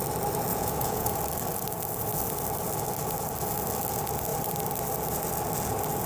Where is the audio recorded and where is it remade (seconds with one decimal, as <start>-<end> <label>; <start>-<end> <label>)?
0.0-0.5 recorded; 0.5-1.2 remade; 1.2-6.1 recorded